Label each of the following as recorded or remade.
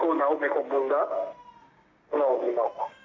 recorded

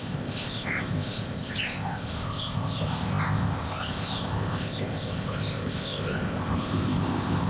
remade